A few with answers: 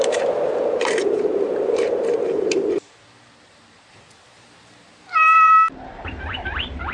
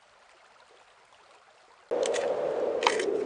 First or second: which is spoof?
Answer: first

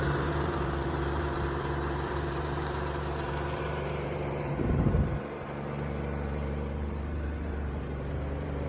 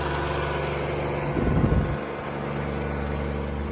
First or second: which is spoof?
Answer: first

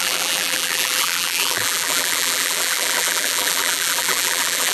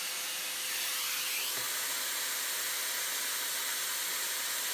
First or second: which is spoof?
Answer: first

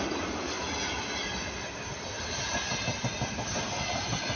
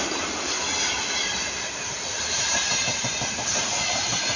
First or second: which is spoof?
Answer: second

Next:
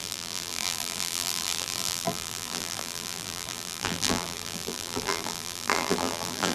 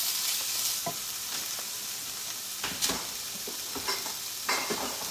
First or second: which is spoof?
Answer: first